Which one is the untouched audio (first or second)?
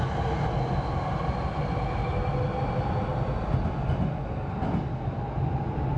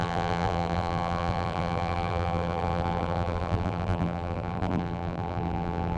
first